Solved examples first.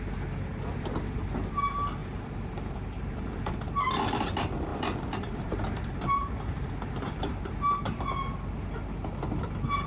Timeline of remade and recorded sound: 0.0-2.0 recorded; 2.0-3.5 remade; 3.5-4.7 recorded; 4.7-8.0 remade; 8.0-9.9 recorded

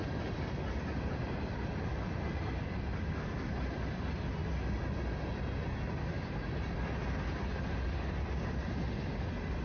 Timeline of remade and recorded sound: 0.0-9.6 recorded